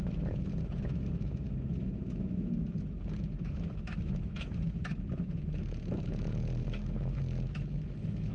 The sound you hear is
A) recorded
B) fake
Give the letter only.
B